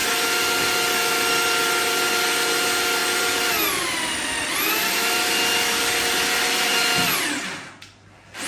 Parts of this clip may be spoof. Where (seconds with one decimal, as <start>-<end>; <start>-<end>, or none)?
none